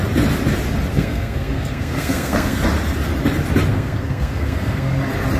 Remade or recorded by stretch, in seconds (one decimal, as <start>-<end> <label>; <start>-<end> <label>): 0.0-0.9 recorded; 0.9-2.6 remade; 2.6-3.7 recorded; 3.7-5.0 remade; 5.0-5.4 recorded